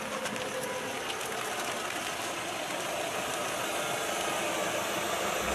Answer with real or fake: real